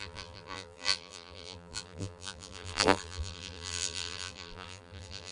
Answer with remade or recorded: remade